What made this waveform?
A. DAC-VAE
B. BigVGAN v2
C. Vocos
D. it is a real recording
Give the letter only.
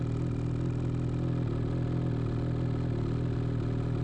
D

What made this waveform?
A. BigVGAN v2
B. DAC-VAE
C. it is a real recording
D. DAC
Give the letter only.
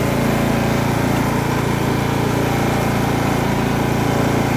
C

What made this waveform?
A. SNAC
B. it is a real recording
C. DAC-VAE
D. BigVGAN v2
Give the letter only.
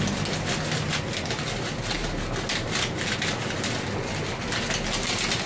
B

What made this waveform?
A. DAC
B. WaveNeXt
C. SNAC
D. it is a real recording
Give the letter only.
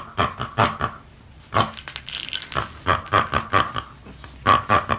D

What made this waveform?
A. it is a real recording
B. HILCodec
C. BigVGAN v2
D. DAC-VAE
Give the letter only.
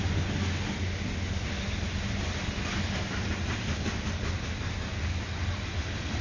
A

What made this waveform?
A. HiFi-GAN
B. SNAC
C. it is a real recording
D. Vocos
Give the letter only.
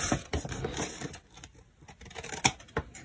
C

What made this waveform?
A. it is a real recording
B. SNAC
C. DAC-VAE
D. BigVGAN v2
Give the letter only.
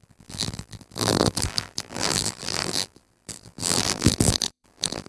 D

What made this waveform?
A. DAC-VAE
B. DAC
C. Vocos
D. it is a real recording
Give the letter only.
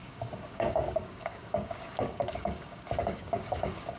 B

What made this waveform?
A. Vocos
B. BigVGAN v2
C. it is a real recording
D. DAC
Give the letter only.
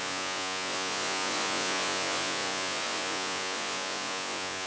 A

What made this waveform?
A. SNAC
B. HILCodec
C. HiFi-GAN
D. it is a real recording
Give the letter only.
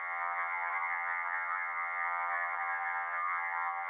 C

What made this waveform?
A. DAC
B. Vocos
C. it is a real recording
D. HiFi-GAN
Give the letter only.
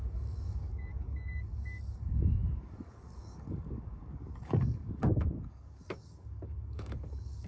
A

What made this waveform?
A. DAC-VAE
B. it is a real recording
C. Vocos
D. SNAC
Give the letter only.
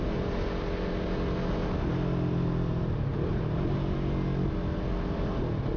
B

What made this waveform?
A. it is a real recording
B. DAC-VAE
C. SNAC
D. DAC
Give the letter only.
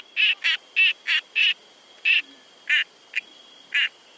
A